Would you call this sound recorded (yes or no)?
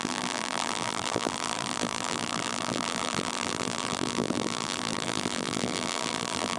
no